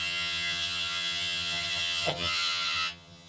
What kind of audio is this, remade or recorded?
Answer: remade